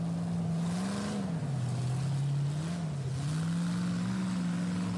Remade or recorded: recorded